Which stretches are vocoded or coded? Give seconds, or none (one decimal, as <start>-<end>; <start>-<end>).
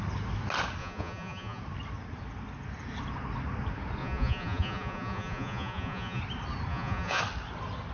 0.8-1.6; 4.0-6.2; 6.7-7.2